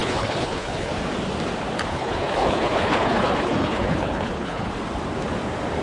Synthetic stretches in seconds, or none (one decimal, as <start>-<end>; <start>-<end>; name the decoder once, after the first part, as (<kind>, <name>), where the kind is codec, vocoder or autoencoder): 0.0-0.9 (codec, HILCodec); 1.9-4.7

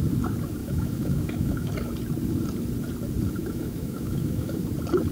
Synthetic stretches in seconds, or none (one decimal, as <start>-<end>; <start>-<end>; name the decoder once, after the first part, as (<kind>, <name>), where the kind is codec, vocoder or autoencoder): 0.6-1.7 (autoencoder, DAC-VAE); 3.4-4.6

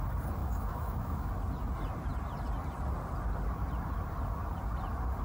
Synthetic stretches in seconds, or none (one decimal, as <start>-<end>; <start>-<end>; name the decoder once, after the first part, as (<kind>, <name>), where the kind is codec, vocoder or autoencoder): 0.4-1.3 (autoencoder, DAC-VAE)

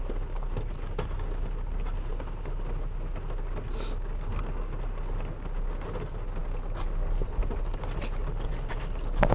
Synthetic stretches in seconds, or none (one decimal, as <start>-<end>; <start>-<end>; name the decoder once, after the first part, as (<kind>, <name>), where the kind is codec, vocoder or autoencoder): none

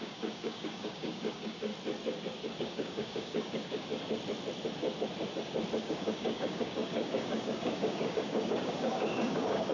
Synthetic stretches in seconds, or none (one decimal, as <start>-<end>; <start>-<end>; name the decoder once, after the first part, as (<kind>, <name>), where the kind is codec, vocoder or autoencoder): 0.0-1.7 (codec, DAC); 2.6-3.9; 5.8-9.7

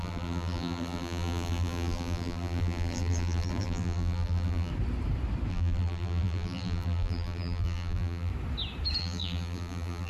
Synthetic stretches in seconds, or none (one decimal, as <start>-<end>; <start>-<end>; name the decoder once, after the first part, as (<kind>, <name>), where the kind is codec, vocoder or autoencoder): 0.0-4.7 (vocoder, BigVGAN v2); 5.5-8.3; 9.0-10.1

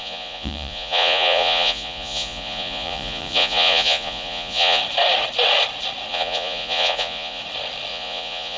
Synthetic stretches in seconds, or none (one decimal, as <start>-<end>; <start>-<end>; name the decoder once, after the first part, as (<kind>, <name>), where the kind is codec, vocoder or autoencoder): 0.0-4.8 (vocoder, Vocos); 6.1-7.4; 7.9-8.6